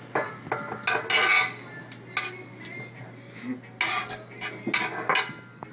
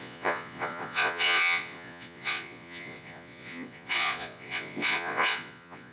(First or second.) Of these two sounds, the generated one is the second